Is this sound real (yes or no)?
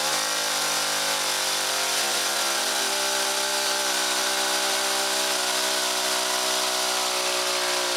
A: yes